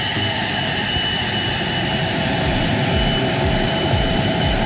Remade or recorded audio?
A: remade